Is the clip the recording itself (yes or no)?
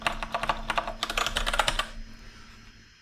yes